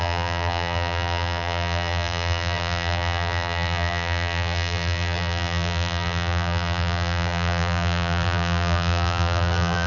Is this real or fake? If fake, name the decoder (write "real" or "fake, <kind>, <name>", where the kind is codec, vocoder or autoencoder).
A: fake, vocoder, BigVGAN v2